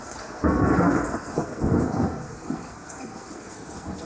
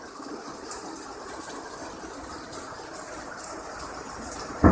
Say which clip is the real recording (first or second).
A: second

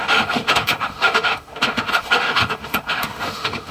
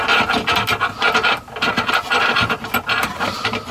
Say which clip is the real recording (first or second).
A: second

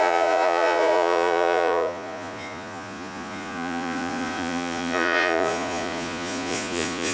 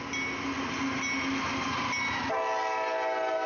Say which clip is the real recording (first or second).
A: second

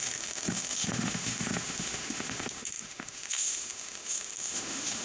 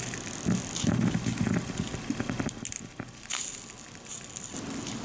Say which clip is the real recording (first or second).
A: second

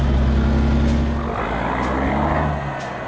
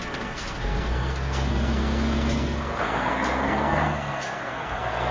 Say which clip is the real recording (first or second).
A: first